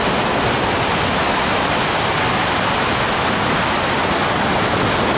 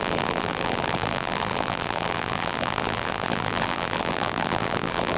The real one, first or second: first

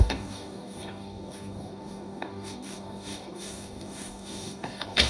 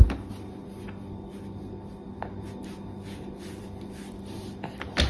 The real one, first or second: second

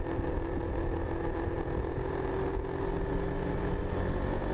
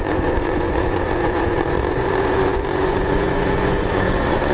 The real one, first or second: first